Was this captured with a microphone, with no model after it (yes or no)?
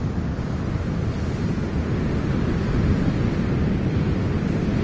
yes